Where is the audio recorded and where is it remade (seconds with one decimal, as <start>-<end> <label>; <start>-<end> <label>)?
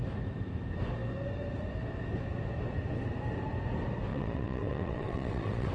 0.0-4.1 recorded; 4.1-5.7 remade